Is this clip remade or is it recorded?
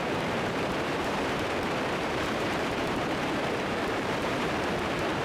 remade